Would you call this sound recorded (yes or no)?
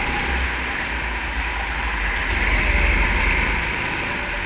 yes